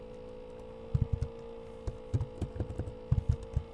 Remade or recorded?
recorded